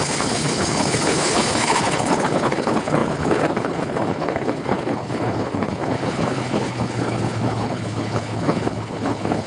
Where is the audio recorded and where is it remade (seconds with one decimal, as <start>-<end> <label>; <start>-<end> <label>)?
0.0-9.5 remade